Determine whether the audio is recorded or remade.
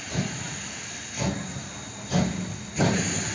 recorded